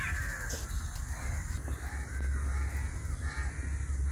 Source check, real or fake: real